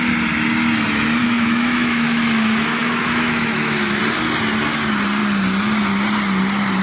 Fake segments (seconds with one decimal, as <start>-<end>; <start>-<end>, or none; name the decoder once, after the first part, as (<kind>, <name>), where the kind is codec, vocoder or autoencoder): 1.2-4.0 (autoencoder, DAC-VAE)